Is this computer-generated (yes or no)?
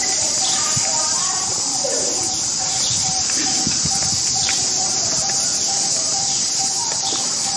yes